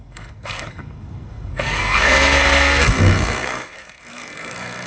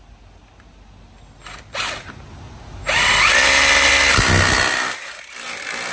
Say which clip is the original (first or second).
second